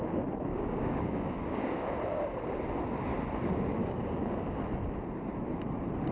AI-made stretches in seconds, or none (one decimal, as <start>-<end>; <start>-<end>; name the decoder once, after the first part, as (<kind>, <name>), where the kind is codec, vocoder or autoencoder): 0.5-1.9 (codec, DAC); 3.8-4.6